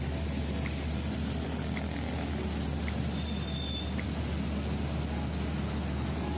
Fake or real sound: real